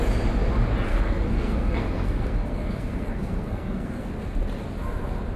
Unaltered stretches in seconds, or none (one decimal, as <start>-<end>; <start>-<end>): 0.0-0.9; 4.1-5.4

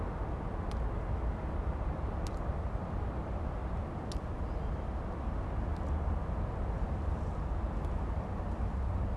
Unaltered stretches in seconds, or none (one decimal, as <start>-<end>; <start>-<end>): 0.0-9.2

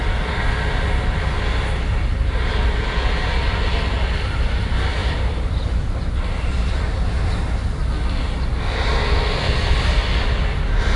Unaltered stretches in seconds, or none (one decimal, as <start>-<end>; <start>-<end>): 0.0-5.0; 7.3-11.0

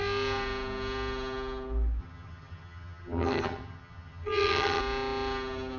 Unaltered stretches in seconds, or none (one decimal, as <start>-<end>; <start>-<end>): 0.0-2.0; 4.8-5.8